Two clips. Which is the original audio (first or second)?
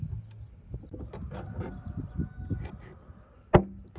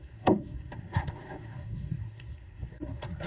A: first